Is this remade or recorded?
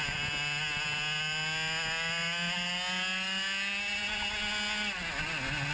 recorded